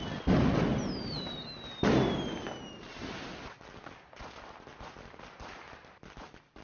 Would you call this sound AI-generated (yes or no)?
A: no